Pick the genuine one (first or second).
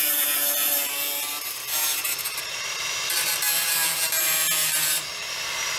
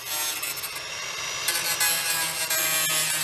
second